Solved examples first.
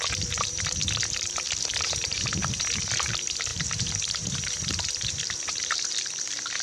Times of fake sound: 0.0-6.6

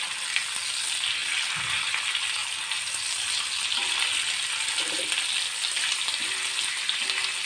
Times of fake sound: none

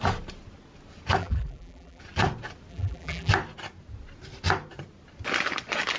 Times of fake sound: 1.2-2.0; 2.7-3.3

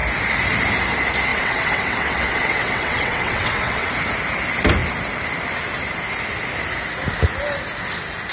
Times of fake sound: 1.3-3.9

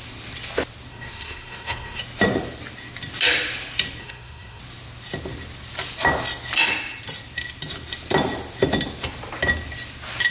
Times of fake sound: 0.9-2.0; 4.0-4.6

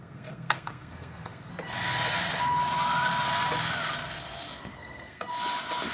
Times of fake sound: 0.0-1.5; 4.7-5.3

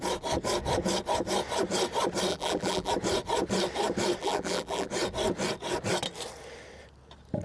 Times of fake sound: 2.3-2.9; 4.2-4.9

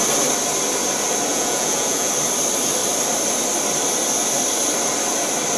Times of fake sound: 1.3-2.1